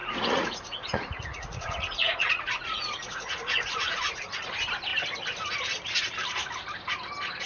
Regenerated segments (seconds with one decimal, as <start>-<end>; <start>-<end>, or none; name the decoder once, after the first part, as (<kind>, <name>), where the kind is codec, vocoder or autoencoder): 0.0-4.2 (vocoder, Vocos)